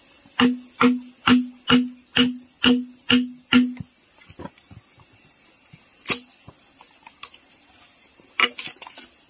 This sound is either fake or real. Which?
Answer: real